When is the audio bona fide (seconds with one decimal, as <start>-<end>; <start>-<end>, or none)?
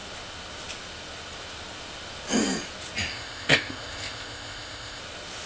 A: 0.0-3.1; 5.0-5.5